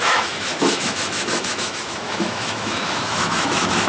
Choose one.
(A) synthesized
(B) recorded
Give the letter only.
A